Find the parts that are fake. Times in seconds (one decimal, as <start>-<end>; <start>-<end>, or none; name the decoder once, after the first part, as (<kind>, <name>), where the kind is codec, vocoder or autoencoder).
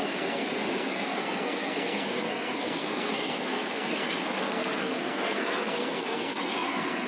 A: 0.0-7.1 (codec, SNAC)